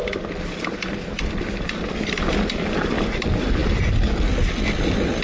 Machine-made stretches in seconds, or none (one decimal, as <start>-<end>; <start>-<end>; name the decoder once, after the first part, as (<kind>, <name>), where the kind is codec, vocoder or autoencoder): none